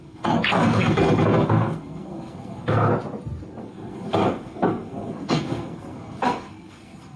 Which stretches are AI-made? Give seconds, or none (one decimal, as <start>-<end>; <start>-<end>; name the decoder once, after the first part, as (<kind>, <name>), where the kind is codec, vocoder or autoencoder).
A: 0.0-2.9 (codec, SNAC); 3.6-7.2